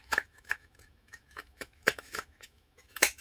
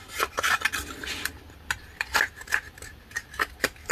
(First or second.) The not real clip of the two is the first